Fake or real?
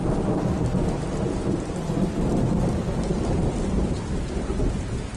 real